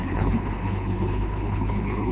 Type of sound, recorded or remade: remade